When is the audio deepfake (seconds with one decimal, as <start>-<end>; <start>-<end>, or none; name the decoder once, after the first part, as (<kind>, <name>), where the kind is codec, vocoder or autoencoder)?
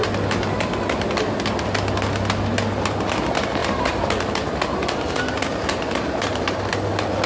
3.6-6.6 (vocoder, BigVGAN v2)